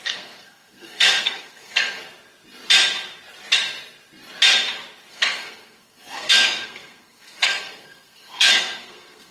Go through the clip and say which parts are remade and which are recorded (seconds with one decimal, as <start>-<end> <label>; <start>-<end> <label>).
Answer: 0.0-2.0 remade; 2.0-5.1 recorded; 5.1-9.3 remade